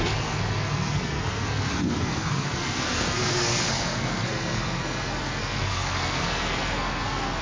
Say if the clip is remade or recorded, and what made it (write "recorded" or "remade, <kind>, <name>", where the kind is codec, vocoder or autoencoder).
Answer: remade, codec, SNAC